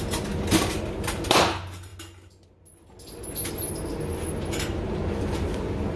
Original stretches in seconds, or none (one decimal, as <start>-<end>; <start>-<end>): 0.0-6.0